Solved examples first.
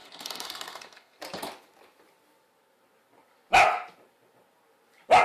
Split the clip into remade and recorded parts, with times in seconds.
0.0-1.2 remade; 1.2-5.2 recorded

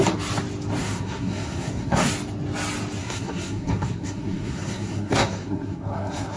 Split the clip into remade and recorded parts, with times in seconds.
0.0-0.8 recorded; 0.8-2.1 remade; 2.1-3.0 recorded; 3.0-6.4 remade

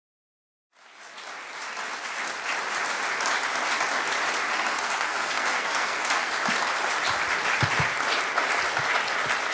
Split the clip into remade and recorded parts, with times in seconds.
0.0-4.5 recorded; 4.5-6.3 remade; 6.3-9.5 recorded